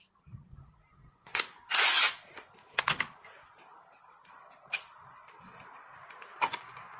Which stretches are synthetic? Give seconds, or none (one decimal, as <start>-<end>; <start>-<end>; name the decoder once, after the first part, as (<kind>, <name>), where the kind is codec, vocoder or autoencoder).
1.0-2.0 (vocoder, Vocos); 6.3-7.0